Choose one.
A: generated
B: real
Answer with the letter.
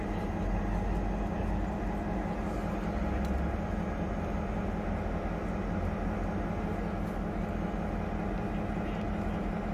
B